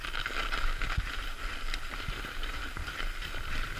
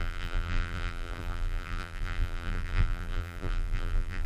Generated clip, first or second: second